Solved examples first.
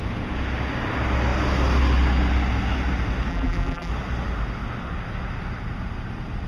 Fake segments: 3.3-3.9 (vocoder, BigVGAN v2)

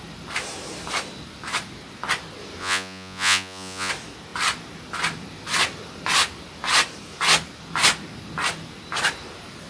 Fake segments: 2.6-3.9 (vocoder, Vocos)